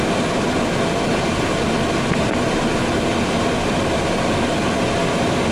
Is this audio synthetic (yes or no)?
no